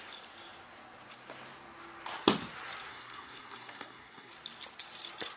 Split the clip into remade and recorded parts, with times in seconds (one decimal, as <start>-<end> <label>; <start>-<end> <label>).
0.0-2.9 recorded; 2.9-4.3 remade; 4.3-5.4 recorded